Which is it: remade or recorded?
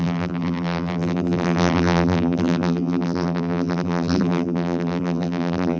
remade